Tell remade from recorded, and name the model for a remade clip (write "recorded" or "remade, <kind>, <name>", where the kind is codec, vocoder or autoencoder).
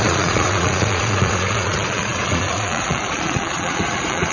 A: remade, vocoder, Vocos